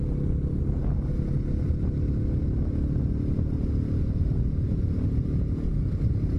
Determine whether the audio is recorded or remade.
recorded